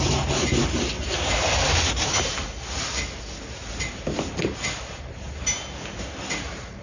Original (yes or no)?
yes